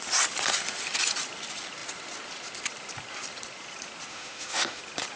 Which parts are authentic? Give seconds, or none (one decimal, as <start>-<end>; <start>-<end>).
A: 0.0-4.1; 4.8-5.2